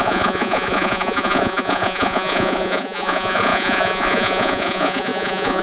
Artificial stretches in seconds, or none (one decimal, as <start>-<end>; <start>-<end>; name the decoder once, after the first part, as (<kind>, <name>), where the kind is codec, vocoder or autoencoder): 0.0-5.6 (vocoder, Vocos)